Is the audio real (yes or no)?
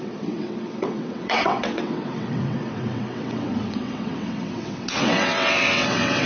no